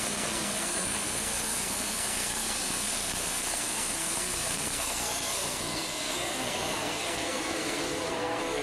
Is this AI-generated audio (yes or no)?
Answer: yes